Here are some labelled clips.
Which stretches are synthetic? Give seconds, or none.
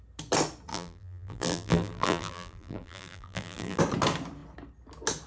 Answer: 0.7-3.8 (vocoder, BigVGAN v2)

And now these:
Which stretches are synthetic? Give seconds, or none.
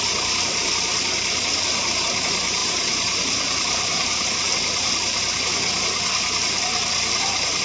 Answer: 2.6-4.5 (vocoder, BigVGAN v2)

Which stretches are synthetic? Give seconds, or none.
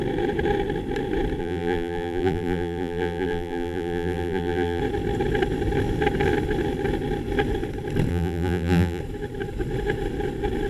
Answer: 1.4-4.8 (vocoder, BigVGAN v2); 8.1-9.0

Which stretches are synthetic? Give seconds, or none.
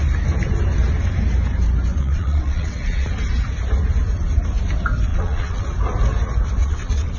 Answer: 1.9-3.1 (vocoder, WaveNeXt); 5.1-5.6; 6.6-7.2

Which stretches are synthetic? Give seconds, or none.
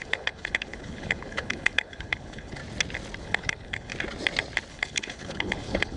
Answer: 0.0-2.6 (codec, HILCodec); 3.2-3.9; 4.7-6.0